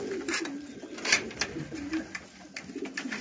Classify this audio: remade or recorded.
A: recorded